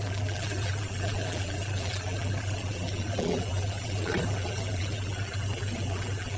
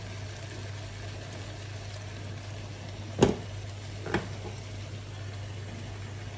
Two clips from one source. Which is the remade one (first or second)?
first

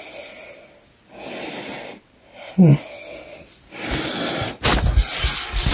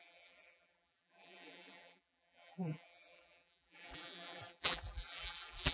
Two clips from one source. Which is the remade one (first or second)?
second